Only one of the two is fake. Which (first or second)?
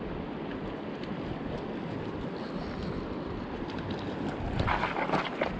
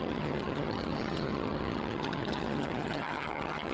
second